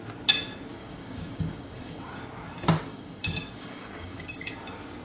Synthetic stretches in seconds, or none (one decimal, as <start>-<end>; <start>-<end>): 0.7-2.2; 2.9-4.5